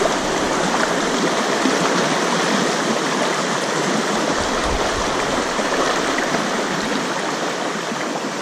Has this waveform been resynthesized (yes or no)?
no